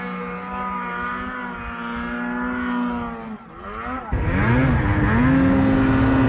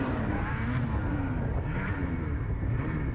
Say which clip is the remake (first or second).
second